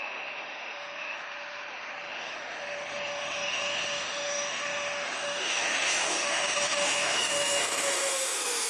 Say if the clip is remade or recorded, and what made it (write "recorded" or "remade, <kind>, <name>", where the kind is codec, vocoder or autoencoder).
remade, autoencoder, DAC-VAE